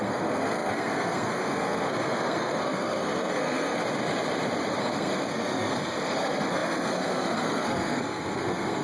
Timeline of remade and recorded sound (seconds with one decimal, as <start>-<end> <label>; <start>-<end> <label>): 0.0-3.8 remade; 3.8-4.8 recorded; 4.8-8.8 remade